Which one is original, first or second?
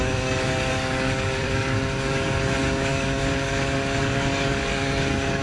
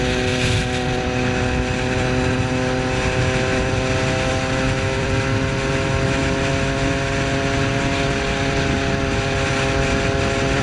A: second